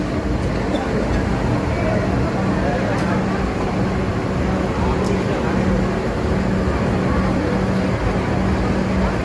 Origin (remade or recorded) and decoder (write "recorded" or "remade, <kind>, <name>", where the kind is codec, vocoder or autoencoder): recorded